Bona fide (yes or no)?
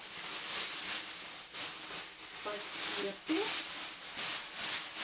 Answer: yes